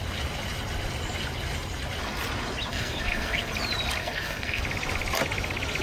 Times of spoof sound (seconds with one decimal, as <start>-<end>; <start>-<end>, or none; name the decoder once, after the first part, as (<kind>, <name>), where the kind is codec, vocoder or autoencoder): 2.7-3.5 (codec, SNAC); 4.0-4.6